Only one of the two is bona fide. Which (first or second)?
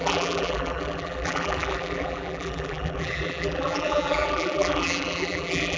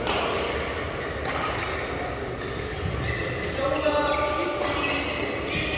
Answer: second